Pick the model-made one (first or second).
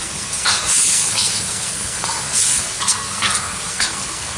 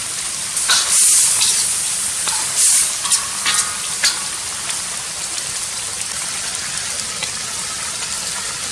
first